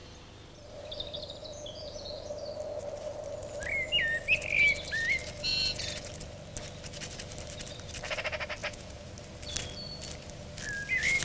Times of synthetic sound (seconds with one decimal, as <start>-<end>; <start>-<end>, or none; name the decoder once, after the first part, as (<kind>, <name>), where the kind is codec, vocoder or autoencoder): 1.4-2.3 (vocoder, Vocos); 5.5-6.1; 8.6-9.1